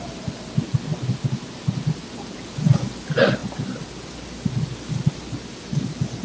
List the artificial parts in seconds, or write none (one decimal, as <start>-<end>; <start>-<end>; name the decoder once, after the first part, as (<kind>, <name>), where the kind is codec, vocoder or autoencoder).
none